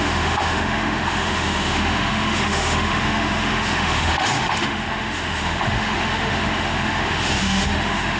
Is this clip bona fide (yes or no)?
no